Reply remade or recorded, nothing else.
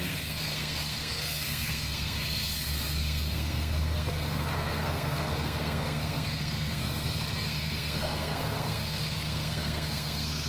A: remade